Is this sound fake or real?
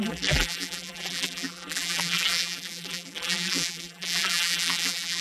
fake